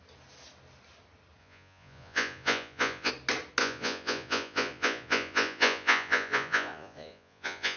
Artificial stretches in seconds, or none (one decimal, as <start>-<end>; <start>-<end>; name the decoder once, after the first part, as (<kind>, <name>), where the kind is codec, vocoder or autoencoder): 1.4-3.1 (vocoder, Vocos); 3.6-7.8